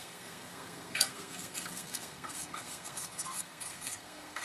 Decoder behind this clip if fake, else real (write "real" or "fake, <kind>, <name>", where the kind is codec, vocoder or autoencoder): fake, codec, SNAC